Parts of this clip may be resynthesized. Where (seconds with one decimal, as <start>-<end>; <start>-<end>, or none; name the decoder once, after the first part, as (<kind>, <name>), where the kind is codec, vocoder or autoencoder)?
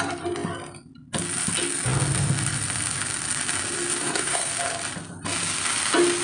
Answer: 4.0-4.5 (codec, SNAC)